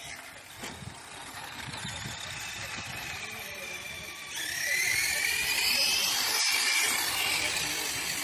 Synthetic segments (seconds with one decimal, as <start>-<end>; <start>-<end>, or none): 1.2-2.0; 4.9-7.1

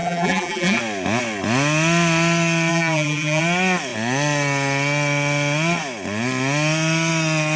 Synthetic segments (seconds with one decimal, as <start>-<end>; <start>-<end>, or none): 0.0-0.8; 2.7-3.4

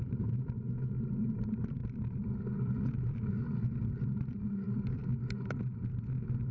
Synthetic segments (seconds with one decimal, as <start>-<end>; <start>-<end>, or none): 0.0-1.8; 4.0-5.0

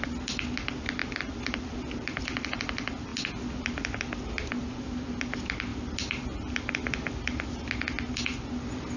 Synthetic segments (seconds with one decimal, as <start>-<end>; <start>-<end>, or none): 1.0-2.2

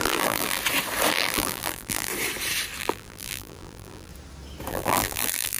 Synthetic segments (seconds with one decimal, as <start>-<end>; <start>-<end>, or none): 0.0-0.6; 1.1-2.1; 2.8-4.1; 4.7-5.6

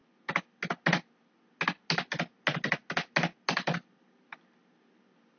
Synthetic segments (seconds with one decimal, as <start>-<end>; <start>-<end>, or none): none

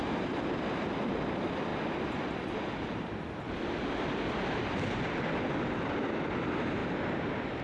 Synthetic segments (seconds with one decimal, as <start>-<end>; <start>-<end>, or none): 0.0-6.8